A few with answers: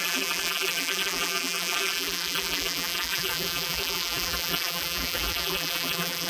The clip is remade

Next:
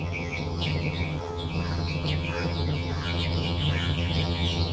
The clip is remade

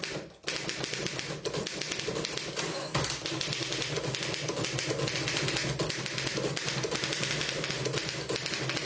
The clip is recorded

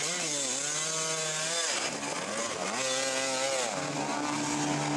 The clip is recorded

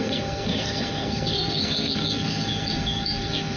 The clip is remade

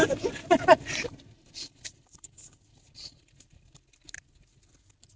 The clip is recorded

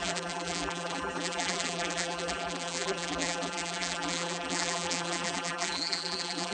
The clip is remade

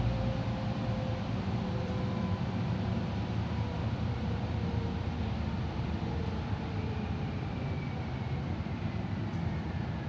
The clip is remade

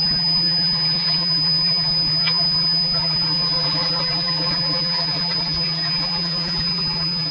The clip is remade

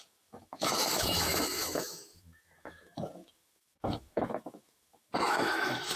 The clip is remade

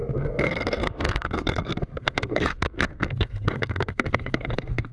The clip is remade